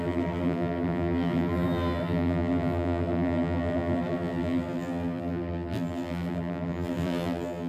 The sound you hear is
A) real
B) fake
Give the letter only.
B